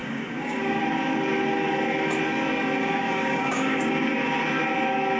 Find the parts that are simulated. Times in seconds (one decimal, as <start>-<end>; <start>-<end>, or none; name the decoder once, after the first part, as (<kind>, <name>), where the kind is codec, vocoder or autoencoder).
0.0-0.8 (codec, DAC); 2.8-4.0